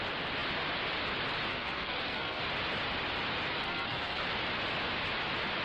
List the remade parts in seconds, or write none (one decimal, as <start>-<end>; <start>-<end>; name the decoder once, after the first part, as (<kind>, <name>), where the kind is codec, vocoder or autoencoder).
1.5-2.4 (codec, SNAC); 3.6-4.2